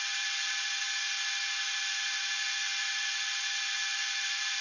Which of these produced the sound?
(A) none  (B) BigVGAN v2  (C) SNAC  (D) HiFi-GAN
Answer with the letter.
B